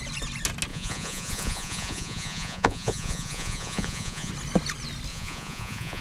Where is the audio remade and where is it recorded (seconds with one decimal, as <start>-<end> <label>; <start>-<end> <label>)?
0.0-0.7 recorded; 0.7-4.3 remade; 4.3-5.1 recorded; 5.1-6.0 remade